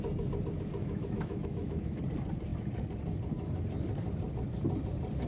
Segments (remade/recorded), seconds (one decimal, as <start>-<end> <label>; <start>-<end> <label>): 0.0-0.8 recorded; 0.8-2.0 remade; 2.0-5.3 recorded